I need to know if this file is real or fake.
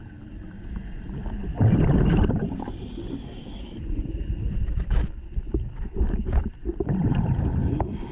fake